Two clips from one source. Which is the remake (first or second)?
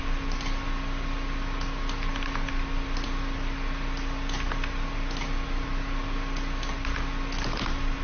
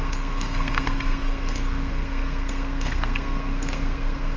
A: second